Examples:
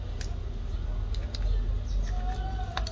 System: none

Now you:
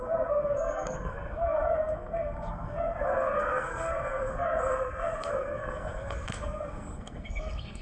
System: codec, SNAC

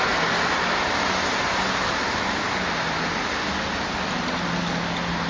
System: none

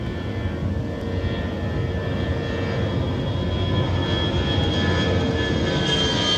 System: none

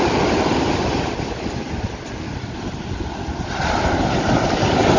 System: vocoder, BigVGAN v2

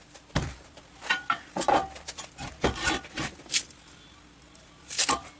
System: none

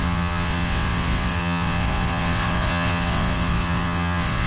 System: vocoder, WaveNeXt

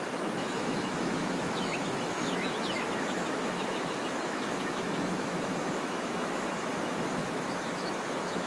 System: autoencoder, DAC-VAE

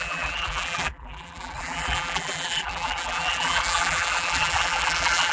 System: vocoder, BigVGAN v2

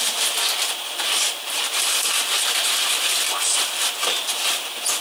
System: vocoder, BigVGAN v2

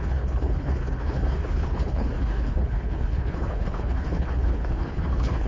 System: codec, HILCodec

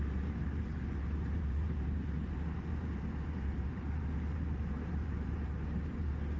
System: vocoder, BigVGAN v2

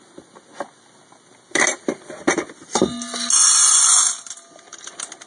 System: none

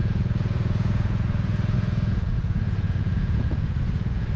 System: vocoder, Vocos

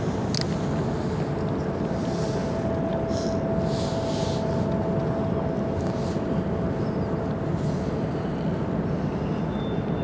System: none